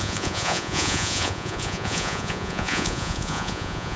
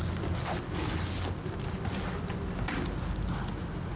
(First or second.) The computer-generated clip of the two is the first